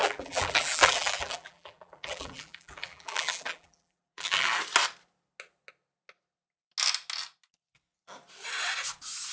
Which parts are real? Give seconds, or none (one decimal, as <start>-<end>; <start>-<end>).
4.5-9.3